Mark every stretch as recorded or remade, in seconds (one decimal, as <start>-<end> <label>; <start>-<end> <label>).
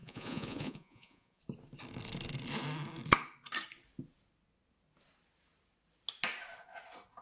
0.0-1.4 remade; 1.4-7.2 recorded